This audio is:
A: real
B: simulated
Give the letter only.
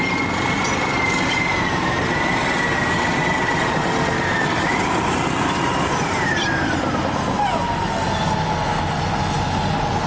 A